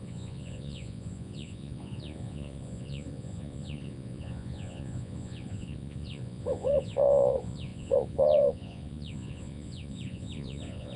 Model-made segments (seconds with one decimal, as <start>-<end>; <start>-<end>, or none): 0.0-11.0